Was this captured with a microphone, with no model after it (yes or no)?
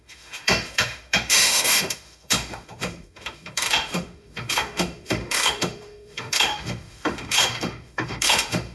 no